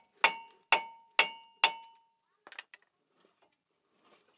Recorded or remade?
recorded